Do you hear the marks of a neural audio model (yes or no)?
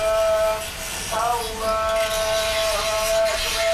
no